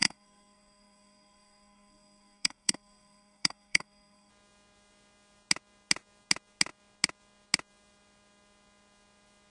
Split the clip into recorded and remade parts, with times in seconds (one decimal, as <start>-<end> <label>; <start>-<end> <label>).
0.0-4.3 remade; 4.3-9.5 recorded